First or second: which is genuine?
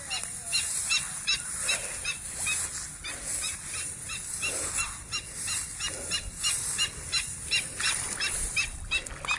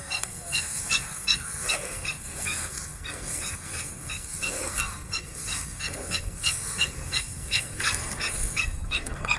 first